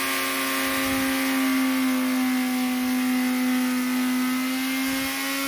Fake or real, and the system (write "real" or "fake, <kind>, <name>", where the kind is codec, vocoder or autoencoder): real